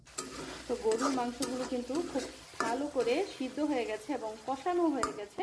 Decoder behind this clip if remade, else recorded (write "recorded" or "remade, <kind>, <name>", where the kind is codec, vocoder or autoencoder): recorded